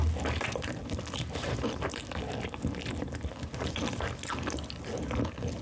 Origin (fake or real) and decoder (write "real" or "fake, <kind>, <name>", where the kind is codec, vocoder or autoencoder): real